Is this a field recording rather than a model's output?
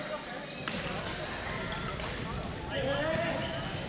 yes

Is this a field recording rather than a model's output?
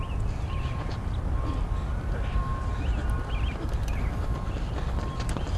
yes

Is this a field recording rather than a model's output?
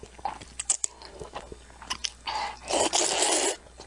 yes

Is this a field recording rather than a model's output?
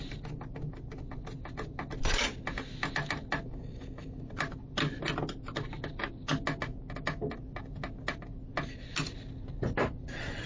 yes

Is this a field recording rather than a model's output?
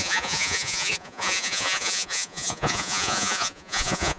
no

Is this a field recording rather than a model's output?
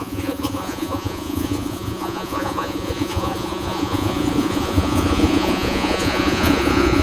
no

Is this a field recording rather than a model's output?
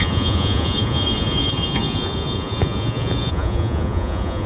no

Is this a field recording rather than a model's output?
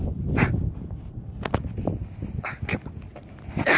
yes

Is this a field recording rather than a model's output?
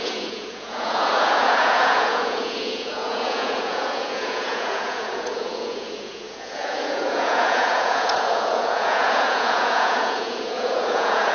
no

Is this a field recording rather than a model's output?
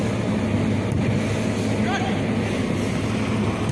yes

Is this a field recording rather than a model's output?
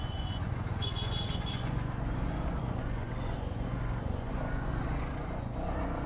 no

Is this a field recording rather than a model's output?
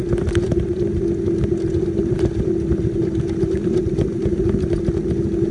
yes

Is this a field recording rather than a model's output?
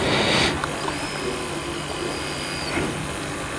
yes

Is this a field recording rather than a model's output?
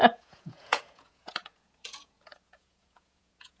no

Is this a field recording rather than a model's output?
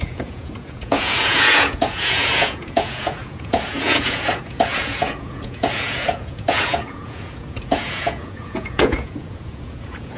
no